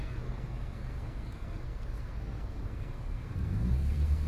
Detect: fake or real fake